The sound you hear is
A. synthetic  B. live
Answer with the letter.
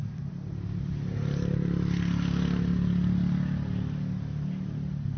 B